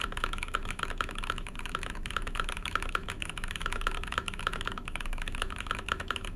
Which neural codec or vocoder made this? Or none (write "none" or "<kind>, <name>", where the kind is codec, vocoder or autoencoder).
autoencoder, DAC-VAE